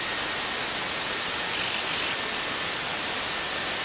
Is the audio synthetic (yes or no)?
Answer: no